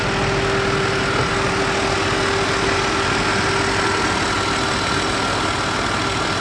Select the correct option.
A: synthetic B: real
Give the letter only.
B